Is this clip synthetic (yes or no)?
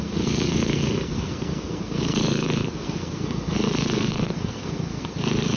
yes